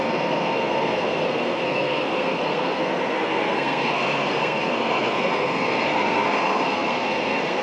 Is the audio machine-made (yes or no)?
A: yes